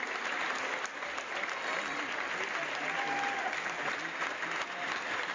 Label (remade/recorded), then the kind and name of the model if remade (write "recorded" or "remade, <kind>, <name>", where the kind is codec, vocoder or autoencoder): recorded